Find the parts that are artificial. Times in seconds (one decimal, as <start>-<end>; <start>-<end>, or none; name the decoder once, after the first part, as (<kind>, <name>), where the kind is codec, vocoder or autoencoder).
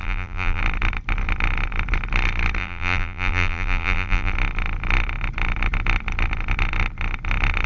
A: 0.0-0.6 (vocoder, BigVGAN v2); 2.6-4.3